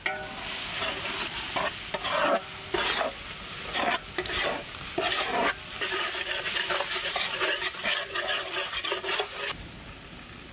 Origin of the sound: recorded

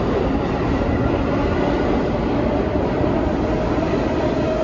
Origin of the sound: recorded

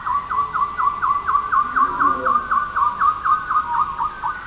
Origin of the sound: recorded